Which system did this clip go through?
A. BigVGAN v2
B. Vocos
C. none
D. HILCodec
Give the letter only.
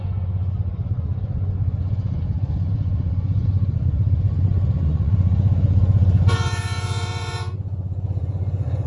B